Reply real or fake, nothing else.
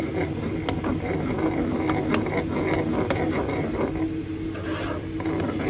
real